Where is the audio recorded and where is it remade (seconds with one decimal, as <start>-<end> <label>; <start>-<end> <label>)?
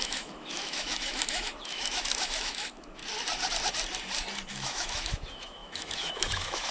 0.0-3.0 remade; 3.0-4.5 recorded; 4.5-6.7 remade